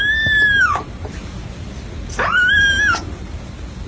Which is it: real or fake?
real